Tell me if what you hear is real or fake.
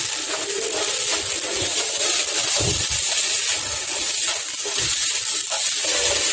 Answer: real